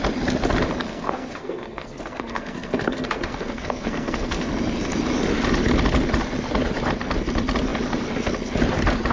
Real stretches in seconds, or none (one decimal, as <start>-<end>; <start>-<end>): 0.0-0.9; 4.5-9.1